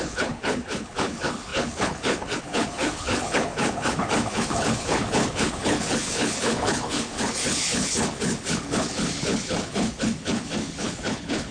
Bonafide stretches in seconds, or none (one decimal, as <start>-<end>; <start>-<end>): none